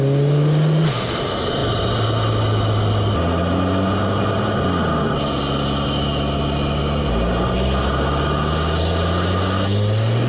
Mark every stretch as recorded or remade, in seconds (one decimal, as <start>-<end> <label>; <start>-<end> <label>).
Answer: 0.0-10.3 recorded

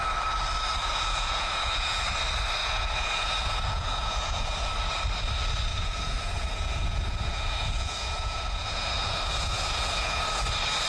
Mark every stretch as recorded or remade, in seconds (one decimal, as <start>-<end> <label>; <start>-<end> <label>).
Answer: 0.0-0.8 recorded; 0.8-2.0 remade; 2.0-2.6 recorded; 2.6-4.7 remade; 4.7-5.7 recorded; 5.7-10.2 remade; 10.2-10.9 recorded